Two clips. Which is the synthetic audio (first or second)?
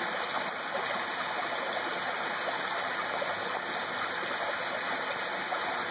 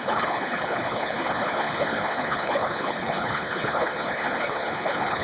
second